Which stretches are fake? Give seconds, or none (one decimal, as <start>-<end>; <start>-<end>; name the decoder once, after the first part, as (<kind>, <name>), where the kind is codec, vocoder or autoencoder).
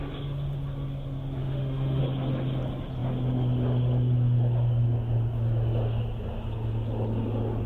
1.4-2.0 (autoencoder, DAC-VAE)